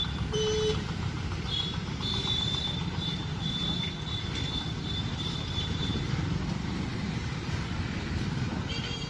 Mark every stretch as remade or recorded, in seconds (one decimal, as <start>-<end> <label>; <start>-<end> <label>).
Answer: 0.0-1.2 remade; 1.2-2.6 recorded; 2.6-3.3 remade; 3.3-4.8 recorded; 4.8-5.9 remade; 5.9-6.5 recorded; 6.5-9.1 remade